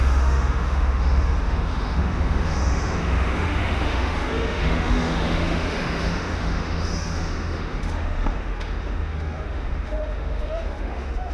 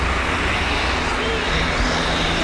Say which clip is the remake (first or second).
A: first